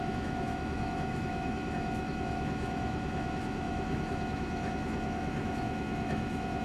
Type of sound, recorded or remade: remade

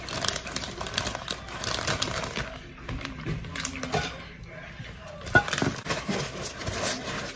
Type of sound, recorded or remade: recorded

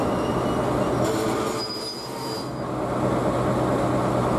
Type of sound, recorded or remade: recorded